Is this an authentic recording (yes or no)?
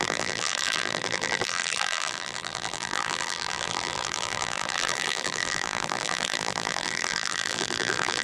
no